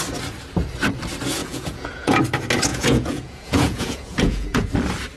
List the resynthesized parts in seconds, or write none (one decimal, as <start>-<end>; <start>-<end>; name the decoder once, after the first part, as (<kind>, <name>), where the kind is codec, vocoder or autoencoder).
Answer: 1.4-2.2 (vocoder, Vocos); 2.7-4.7